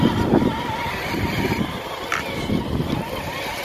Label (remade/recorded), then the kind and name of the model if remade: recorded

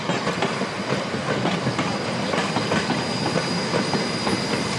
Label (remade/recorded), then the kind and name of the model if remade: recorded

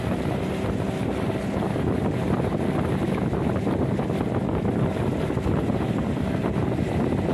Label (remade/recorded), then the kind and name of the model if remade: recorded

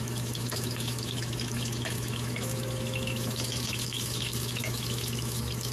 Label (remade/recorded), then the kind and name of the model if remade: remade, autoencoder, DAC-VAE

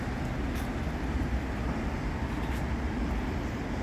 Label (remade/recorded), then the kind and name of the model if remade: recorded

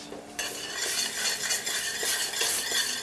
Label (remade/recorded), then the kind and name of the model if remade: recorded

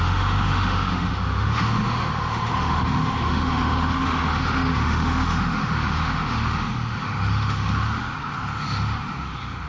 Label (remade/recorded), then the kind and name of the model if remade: remade, autoencoder, DAC-VAE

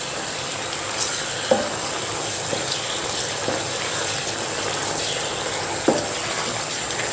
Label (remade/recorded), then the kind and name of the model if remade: recorded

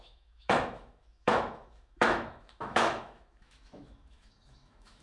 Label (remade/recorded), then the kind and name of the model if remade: remade, autoencoder, DAC-VAE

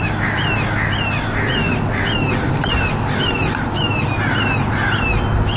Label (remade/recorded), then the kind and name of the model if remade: recorded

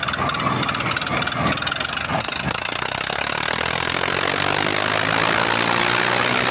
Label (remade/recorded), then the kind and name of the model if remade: recorded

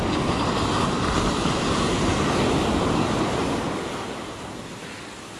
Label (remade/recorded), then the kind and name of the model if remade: recorded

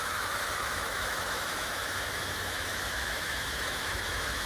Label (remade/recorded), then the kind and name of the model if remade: remade, autoencoder, DAC-VAE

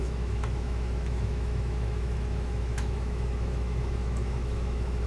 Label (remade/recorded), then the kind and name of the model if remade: remade, autoencoder, DAC-VAE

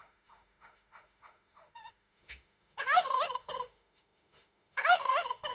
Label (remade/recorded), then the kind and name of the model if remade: remade, autoencoder, DAC-VAE